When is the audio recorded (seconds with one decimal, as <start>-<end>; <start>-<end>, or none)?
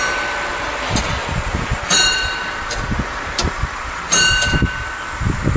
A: 0.0-1.2; 4.0-5.6